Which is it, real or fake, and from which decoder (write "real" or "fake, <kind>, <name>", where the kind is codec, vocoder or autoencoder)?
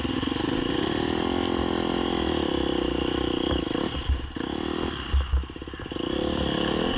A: real